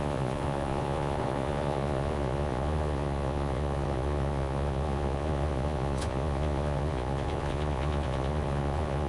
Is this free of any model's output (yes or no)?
no